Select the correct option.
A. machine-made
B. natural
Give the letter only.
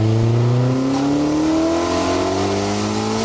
B